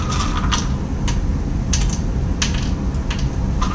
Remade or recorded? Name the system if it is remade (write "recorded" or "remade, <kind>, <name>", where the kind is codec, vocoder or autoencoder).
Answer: recorded